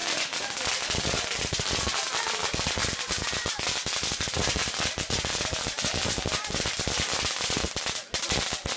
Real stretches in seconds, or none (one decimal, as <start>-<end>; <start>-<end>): 1.4-2.8; 4.4-8.8